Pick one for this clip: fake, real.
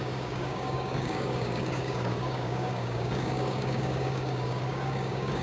fake